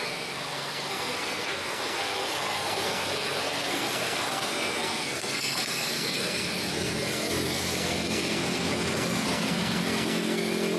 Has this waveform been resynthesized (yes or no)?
yes